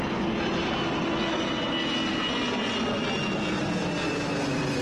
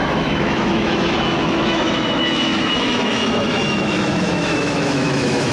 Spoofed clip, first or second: second